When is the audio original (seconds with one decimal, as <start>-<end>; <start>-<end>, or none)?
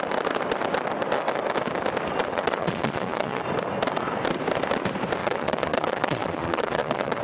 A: 0.0-2.3; 3.4-5.2